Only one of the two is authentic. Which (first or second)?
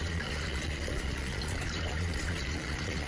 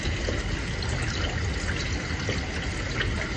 second